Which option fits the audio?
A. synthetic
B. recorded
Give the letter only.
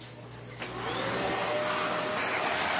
B